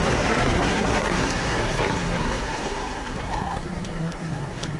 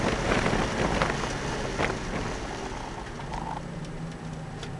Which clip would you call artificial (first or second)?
first